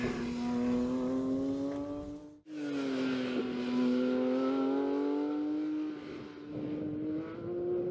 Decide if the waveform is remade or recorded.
recorded